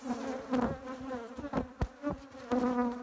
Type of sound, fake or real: real